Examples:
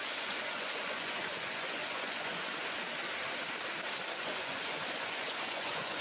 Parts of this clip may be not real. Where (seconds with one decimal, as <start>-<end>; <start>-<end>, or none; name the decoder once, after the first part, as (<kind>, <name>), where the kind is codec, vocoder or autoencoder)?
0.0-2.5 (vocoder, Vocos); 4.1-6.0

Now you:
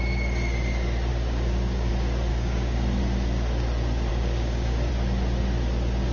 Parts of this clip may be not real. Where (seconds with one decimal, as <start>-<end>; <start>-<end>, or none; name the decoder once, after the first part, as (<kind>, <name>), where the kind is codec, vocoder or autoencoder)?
1.1-1.9 (codec, DAC); 2.3-3.0; 4.1-4.9

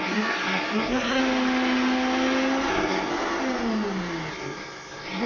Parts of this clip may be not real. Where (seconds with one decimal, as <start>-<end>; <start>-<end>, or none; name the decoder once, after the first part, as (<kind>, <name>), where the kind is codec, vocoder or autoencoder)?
0.0-1.2 (codec, SNAC); 2.7-3.1; 4.3-5.3